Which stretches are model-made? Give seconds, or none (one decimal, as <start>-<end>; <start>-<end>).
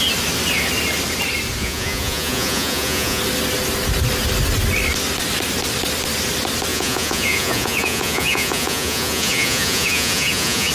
1.6-3.2; 6.7-10.7